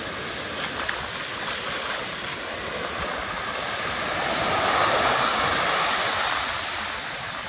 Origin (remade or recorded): recorded